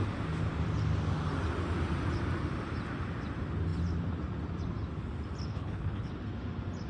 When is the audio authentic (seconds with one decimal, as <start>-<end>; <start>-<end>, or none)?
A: 0.0-5.5; 6.1-6.9